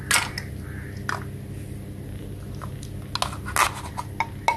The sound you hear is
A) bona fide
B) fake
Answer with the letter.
A